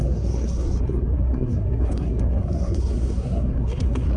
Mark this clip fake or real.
fake